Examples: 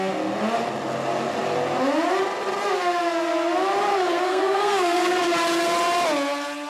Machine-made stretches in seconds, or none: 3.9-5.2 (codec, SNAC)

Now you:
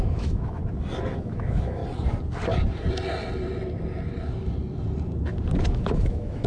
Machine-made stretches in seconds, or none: 0.0-0.6 (autoencoder, DAC-VAE); 1.2-1.8; 5.7-6.5

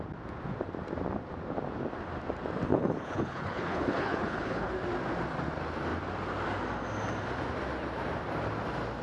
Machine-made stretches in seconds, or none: 2.7-4.7 (codec, HILCodec)

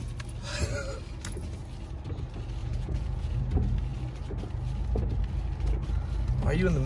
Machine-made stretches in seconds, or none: 2.6-3.4 (vocoder, Vocos)

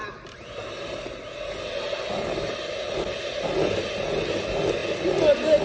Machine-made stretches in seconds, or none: none

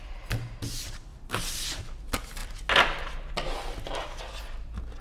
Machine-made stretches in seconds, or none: 1.1-1.8 (vocoder, BigVGAN v2)

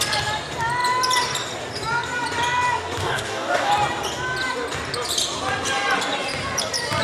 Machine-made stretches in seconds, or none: 3.0-3.7 (codec, DAC)